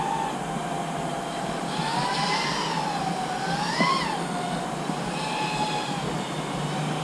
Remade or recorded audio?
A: recorded